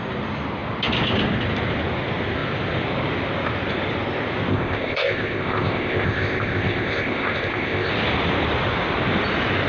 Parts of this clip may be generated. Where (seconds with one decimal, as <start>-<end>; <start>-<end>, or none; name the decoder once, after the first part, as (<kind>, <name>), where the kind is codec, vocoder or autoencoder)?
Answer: 4.5-7.9 (codec, ZipCodec)